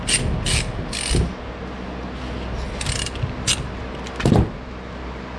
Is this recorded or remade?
recorded